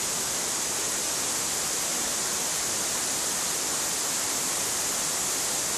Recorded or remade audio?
recorded